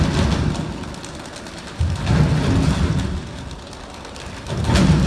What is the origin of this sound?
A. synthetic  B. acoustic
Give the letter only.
B